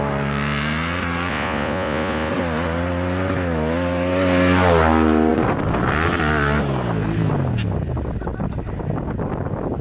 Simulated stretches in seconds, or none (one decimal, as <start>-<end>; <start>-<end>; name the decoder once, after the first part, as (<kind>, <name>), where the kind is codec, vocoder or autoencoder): 1.3-2.3 (vocoder, Vocos)